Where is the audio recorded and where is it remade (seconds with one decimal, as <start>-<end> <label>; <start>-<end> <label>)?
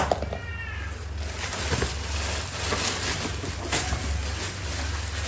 0.0-5.3 recorded